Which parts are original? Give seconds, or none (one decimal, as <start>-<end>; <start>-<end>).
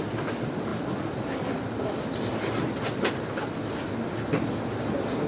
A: 0.0-5.3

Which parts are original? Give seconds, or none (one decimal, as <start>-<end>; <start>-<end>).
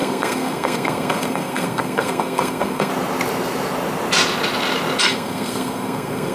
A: 2.9-5.0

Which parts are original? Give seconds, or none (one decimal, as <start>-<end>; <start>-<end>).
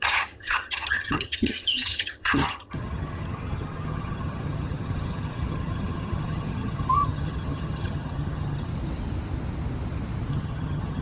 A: 8.7-10.3